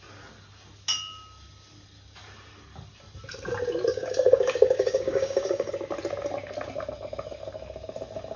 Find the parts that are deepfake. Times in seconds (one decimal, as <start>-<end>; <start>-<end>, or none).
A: 3.9-5.7